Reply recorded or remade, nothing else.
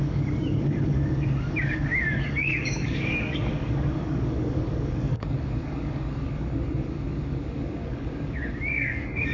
remade